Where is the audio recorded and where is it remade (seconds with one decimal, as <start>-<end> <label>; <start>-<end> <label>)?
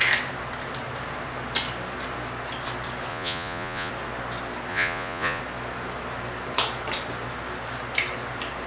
0.0-3.1 recorded; 3.1-3.9 remade; 3.9-4.7 recorded; 4.7-5.4 remade; 5.4-8.7 recorded